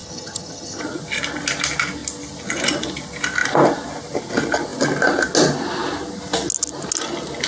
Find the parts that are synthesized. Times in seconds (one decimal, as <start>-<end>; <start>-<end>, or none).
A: 0.0-0.8